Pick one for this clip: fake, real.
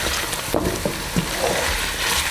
real